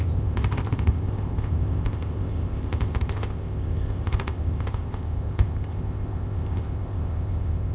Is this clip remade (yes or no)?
yes